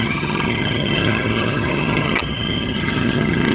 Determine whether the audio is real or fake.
fake